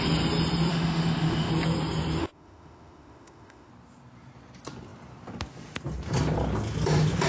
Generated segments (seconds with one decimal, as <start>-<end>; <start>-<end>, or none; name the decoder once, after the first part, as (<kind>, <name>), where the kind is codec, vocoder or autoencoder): 0.7-1.5 (autoencoder, DAC-VAE); 2.2-3.7